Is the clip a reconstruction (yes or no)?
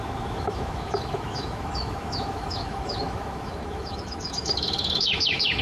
yes